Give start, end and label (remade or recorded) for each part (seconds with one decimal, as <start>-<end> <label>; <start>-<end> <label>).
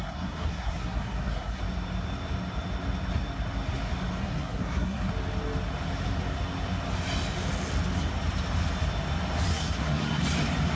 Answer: 0.0-1.6 remade; 1.6-4.2 recorded; 4.2-5.1 remade; 5.1-9.5 recorded; 9.5-10.2 remade; 10.2-10.8 recorded